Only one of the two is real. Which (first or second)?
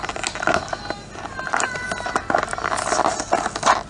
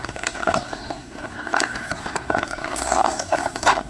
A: first